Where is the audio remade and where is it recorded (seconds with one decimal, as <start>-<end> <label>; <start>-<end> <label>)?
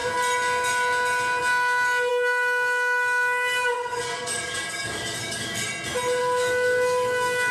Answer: 0.0-2.1 recorded; 2.1-5.7 remade; 5.7-6.2 recorded; 6.2-7.5 remade